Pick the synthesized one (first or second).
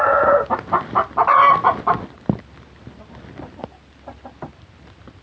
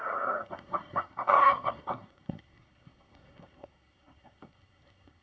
second